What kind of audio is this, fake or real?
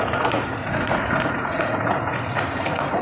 fake